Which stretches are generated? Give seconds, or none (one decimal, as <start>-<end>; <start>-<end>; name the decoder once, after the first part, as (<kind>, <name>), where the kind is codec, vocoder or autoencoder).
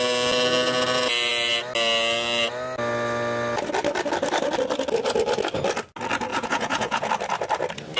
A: 6.3-7.1 (vocoder, Vocos)